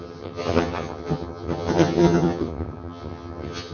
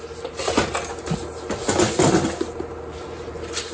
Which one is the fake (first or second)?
first